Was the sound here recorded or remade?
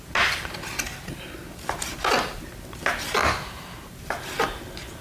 recorded